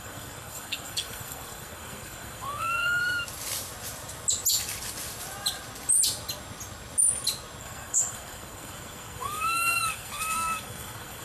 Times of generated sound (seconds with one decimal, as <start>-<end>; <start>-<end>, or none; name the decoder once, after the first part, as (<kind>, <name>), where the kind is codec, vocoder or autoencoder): 0.0-3.0 (codec, SNAC); 7.6-11.2